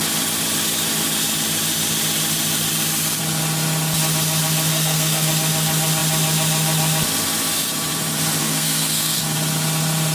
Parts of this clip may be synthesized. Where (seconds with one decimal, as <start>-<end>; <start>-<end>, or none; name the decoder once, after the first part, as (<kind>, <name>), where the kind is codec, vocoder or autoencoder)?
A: 4.7-5.3 (codec, SNAC); 8.4-9.2